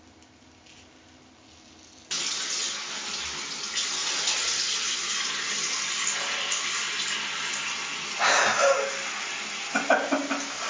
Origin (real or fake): real